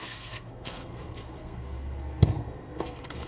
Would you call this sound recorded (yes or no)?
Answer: no